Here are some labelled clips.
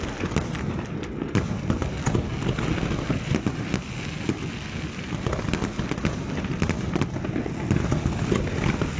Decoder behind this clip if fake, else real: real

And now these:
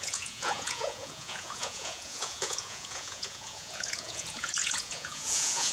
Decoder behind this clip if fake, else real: fake, vocoder, Vocos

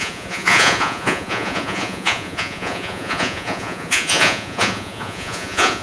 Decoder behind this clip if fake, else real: fake, vocoder, Vocos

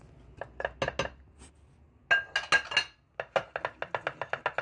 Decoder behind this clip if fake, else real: real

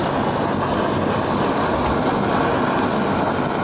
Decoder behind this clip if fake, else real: real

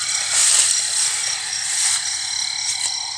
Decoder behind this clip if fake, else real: real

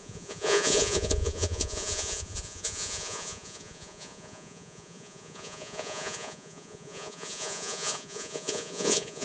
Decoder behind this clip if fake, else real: fake, vocoder, Vocos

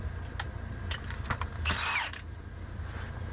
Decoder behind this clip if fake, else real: real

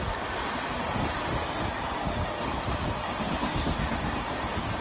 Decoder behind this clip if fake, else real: real